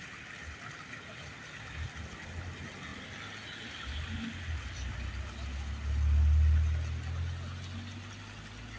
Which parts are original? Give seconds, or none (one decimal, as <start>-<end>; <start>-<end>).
0.0-8.8